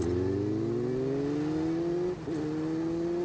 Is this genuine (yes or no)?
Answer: yes